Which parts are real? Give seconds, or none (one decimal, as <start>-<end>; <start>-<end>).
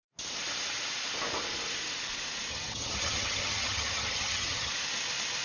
0.0-2.5; 4.7-5.4